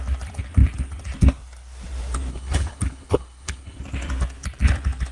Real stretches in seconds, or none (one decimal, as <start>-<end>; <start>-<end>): 0.0-2.3; 3.8-5.1